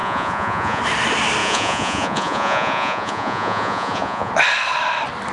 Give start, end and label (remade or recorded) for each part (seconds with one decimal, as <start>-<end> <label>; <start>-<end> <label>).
0.0-0.8 remade; 0.8-1.4 recorded; 1.4-4.3 remade; 4.3-5.3 recorded